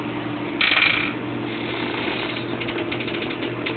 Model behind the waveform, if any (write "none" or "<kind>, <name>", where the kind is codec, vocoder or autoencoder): none